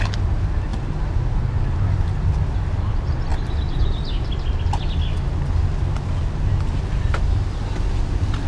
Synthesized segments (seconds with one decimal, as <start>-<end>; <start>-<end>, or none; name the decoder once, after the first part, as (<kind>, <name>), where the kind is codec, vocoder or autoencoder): none